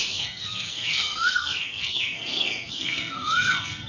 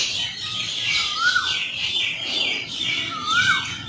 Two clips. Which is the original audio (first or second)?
second